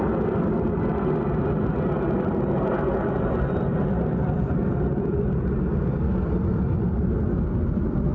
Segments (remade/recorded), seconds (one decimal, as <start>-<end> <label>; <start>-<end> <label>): 0.0-8.1 recorded